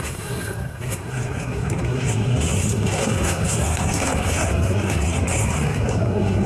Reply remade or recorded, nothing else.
remade